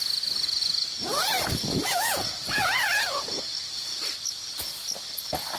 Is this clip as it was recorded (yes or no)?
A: yes